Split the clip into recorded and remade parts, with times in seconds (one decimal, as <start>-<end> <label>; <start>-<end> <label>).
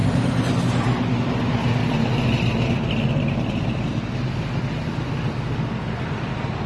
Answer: 0.0-6.7 recorded